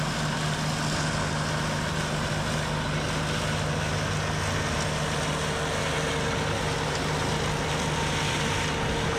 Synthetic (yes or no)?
no